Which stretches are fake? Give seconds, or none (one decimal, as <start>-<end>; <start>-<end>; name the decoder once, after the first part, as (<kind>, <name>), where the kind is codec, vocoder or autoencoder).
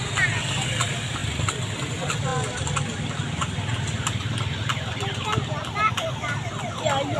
none